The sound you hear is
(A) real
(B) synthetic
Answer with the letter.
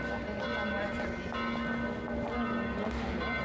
A